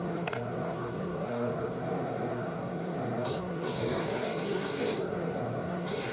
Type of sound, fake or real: fake